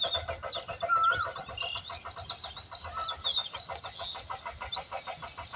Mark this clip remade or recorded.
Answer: recorded